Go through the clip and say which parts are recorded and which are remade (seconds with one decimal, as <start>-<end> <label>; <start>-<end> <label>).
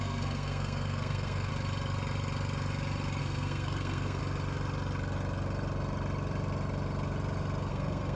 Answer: 0.0-1.5 remade; 1.5-3.2 recorded; 3.2-4.2 remade; 4.2-7.7 recorded; 7.7-8.2 remade